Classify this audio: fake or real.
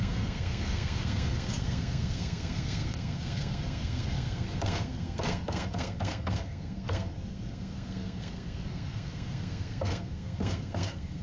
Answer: fake